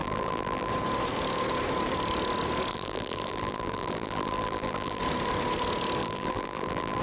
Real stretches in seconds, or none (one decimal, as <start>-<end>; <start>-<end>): 0.7-2.7; 5.0-6.0